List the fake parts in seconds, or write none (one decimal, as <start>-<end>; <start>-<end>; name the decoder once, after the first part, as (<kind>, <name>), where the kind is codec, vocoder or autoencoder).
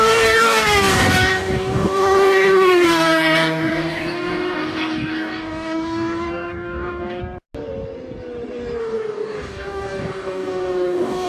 0.0-7.2 (codec, DAC); 8.8-11.3